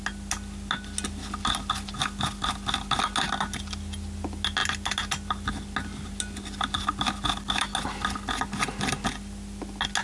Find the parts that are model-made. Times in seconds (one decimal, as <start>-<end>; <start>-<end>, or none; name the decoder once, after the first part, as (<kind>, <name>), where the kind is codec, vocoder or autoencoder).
none